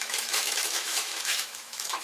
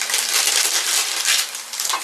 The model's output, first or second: first